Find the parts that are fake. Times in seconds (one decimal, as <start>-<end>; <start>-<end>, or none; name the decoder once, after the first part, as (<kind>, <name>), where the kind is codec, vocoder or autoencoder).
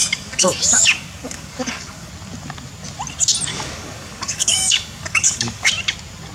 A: 0.0-2.1 (codec, DAC); 3.5-5.7